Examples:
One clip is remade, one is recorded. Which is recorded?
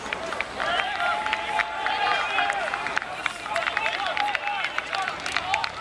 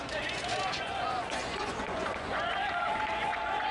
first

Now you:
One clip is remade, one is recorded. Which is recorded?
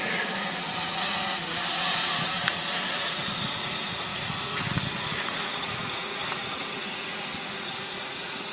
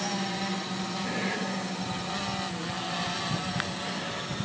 second